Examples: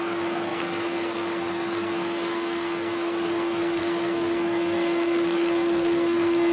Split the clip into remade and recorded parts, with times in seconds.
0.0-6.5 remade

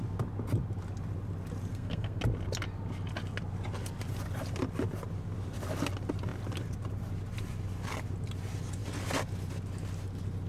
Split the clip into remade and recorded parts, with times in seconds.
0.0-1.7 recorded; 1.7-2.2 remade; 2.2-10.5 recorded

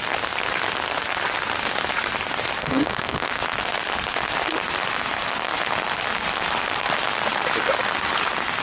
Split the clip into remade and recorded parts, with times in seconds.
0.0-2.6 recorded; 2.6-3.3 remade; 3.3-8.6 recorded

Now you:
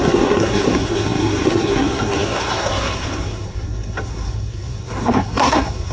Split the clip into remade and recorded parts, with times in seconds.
0.0-5.9 remade

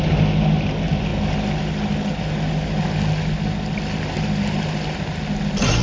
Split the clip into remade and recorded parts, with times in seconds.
0.0-5.8 recorded